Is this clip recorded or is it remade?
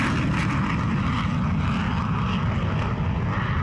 recorded